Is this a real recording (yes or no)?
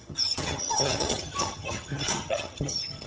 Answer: no